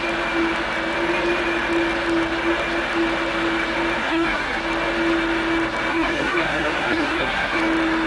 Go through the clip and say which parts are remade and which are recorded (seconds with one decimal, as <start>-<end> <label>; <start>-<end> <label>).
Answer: 0.0-4.0 recorded; 4.0-4.6 remade; 4.6-5.9 recorded; 5.9-7.6 remade; 7.6-8.1 recorded